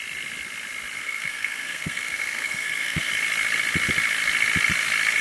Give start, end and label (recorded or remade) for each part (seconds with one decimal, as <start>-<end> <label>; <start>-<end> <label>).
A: 0.0-1.0 recorded; 1.0-3.1 remade; 3.1-5.2 recorded